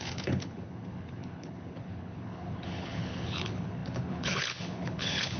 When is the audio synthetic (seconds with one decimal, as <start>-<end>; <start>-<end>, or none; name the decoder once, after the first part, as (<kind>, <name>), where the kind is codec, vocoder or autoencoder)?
0.0-5.4 (codec, HILCodec)